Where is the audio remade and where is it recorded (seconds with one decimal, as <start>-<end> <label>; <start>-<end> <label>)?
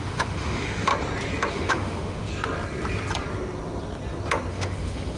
0.0-0.9 remade; 0.9-1.5 recorded; 1.5-2.3 remade; 2.3-4.5 recorded; 4.5-5.2 remade